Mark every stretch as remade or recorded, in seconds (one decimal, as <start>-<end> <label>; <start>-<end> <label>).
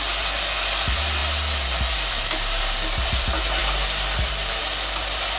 0.0-5.4 recorded